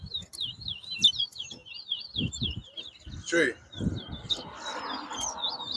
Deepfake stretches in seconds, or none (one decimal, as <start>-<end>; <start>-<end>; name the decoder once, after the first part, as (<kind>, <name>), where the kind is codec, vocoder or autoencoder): none